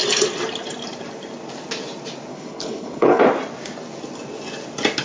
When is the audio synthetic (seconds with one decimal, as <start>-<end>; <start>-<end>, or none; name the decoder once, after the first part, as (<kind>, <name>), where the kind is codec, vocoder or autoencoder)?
2.3-3.2 (codec, HILCodec)